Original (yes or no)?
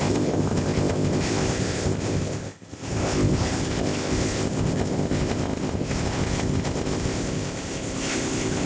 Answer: no